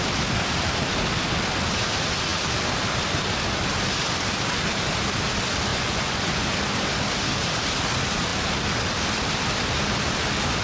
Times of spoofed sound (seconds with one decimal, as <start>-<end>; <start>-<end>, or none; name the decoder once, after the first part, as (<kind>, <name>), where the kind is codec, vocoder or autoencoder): 5.7-6.5 (vocoder, Vocos)